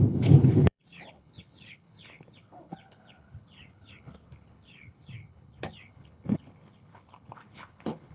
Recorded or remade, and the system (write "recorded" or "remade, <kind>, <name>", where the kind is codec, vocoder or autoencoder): remade, codec, HILCodec